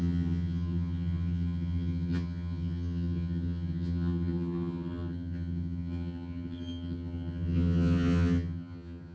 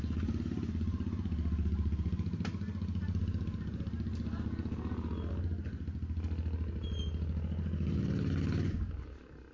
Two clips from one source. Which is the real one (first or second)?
second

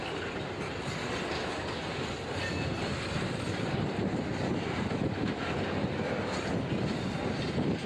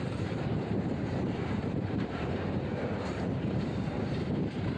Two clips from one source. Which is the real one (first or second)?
first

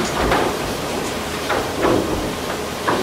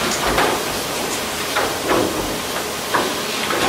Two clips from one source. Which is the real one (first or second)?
second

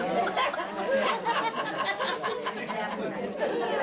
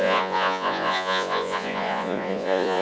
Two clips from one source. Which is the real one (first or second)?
first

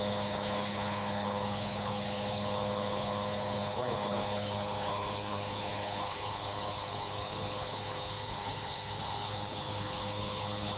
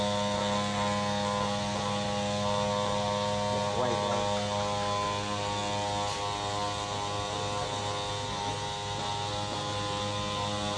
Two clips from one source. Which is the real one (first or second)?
second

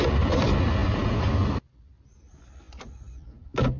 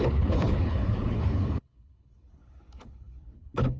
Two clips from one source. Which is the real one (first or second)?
first